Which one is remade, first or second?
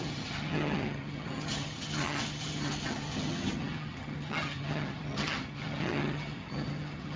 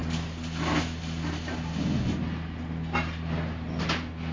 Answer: first